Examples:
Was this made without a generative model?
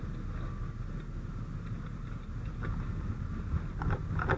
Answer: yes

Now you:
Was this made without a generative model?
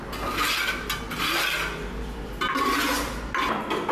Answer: yes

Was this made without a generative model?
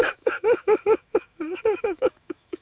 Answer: no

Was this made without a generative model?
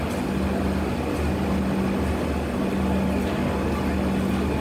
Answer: yes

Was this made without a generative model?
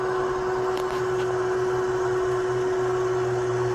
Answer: yes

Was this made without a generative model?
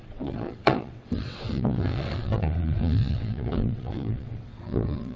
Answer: no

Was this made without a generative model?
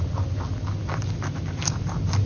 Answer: yes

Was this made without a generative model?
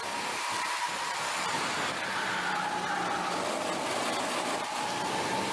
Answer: yes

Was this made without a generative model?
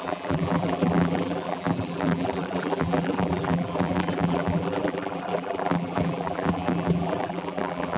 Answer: no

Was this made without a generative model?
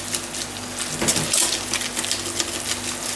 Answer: yes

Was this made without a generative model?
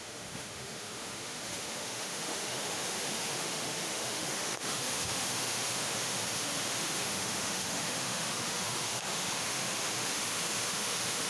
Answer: no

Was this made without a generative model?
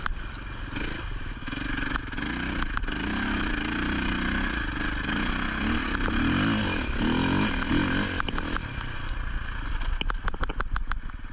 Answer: yes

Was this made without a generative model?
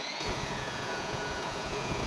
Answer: no